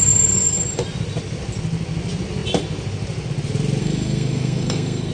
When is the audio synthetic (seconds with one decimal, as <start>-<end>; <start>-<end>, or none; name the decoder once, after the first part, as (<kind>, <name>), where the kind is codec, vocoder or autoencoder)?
3.8-5.1 (codec, SNAC)